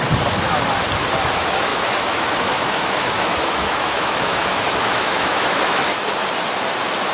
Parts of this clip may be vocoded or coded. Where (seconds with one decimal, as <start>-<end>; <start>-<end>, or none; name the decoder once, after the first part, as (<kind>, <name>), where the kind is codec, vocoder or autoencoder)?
1.7-6.0 (autoencoder, DAC-VAE)